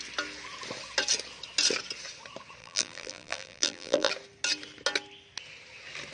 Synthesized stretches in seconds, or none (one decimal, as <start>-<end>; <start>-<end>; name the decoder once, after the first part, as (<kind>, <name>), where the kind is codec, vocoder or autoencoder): 2.6-4.1 (vocoder, BigVGAN v2)